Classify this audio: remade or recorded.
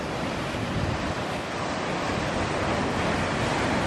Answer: recorded